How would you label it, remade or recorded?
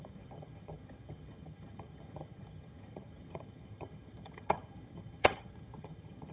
remade